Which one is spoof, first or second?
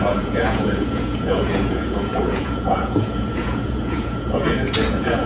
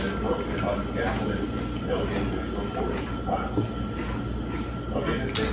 first